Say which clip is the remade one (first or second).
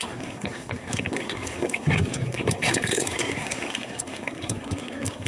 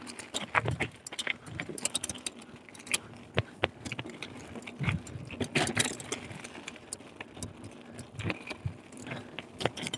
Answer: first